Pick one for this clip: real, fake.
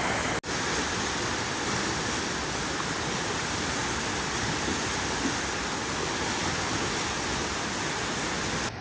real